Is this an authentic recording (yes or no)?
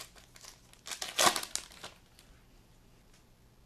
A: yes